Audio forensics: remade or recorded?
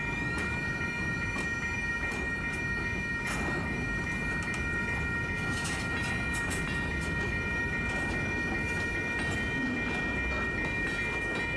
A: recorded